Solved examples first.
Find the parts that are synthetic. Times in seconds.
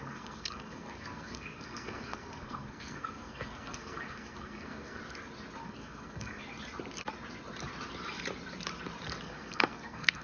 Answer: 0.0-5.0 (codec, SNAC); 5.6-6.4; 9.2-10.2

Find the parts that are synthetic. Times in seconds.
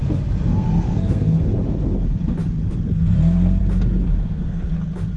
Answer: 0.5-1.6 (codec, SNAC); 2.6-3.6; 4.2-4.7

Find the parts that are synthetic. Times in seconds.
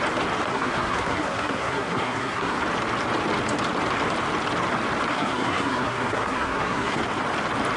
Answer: 0.5-2.6 (codec, SNAC); 5.1-7.0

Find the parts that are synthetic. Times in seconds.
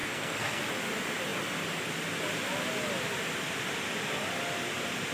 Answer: 0.0-0.6 (codec, SNAC)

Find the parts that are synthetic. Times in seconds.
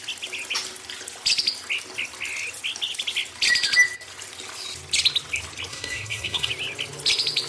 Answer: 5.7-6.5 (codec, SNAC)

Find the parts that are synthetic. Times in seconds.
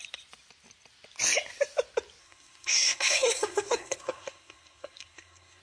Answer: 2.2-5.6 (codec, SNAC)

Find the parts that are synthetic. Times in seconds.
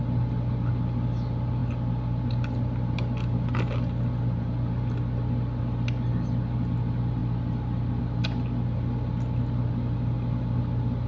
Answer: none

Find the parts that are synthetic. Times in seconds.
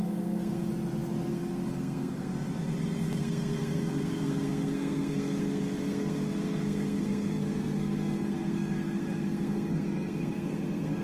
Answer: 0.0-0.7 (codec, SNAC); 1.3-2.3; 3.2-11.0